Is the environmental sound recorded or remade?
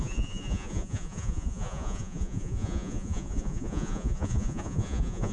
remade